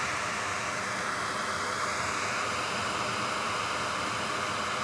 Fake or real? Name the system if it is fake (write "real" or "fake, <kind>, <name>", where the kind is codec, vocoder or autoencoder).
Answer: real